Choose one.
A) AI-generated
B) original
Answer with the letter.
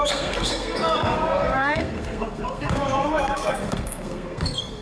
A